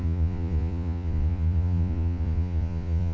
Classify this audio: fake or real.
fake